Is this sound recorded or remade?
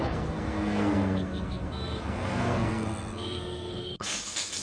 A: remade